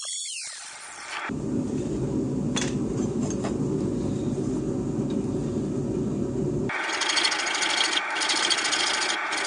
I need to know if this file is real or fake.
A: real